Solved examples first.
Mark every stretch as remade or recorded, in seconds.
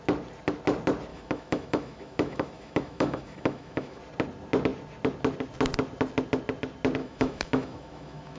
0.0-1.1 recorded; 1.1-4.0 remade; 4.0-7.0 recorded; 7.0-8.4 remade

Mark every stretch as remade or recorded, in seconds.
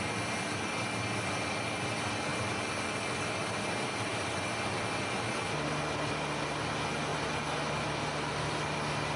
0.0-9.2 recorded